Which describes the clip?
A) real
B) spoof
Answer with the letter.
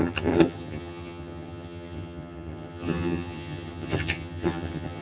B